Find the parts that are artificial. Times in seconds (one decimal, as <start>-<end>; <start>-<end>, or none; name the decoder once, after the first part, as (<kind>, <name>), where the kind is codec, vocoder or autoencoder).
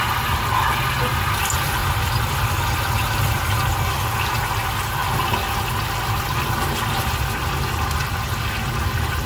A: 1.8-3.9 (vocoder, BigVGAN v2)